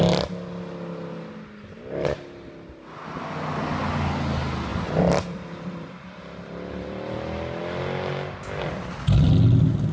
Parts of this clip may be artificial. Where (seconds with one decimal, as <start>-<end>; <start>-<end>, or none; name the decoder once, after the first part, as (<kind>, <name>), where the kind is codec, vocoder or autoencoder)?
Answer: 4.7-7.6 (vocoder, BigVGAN v2)